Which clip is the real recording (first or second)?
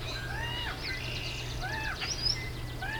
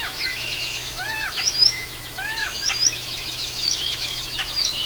first